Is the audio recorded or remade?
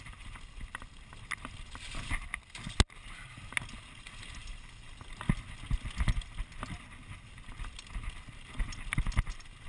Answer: recorded